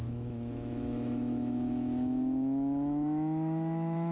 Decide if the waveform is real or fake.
fake